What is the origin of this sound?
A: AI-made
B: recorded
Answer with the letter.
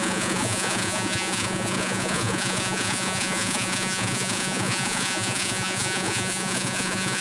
A